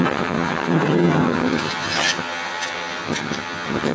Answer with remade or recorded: remade